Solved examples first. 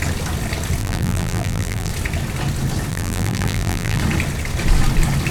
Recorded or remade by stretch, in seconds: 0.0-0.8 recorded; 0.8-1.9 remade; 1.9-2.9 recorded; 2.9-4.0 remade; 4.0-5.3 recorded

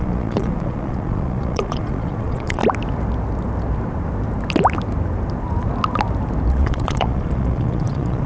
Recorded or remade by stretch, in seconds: 0.0-2.6 remade; 2.6-6.5 recorded; 6.5-8.3 remade

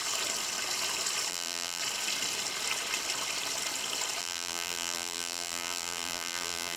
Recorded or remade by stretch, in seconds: 0.0-1.3 recorded; 1.3-1.8 remade; 1.8-4.2 recorded; 4.2-6.8 remade

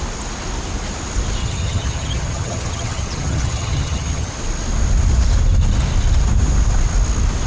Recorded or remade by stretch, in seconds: 0.0-1.4 recorded; 1.4-4.3 remade; 4.3-7.5 recorded

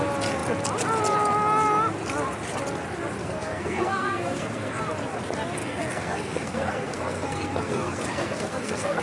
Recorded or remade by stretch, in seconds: 0.0-3.2 recorded; 3.2-4.8 remade; 4.8-5.6 recorded; 5.6-9.0 remade

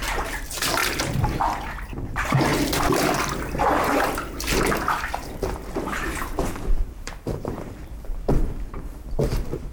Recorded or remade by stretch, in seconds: 0.0-0.8 remade; 0.8-1.9 recorded; 1.9-2.5 remade; 2.5-6.7 recorded; 6.7-9.7 remade